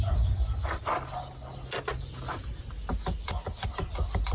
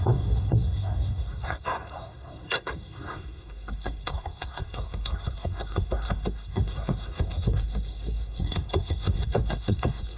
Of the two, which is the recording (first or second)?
first